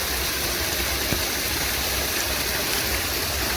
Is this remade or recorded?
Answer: recorded